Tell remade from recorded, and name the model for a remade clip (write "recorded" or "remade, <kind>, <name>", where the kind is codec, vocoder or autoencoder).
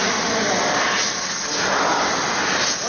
recorded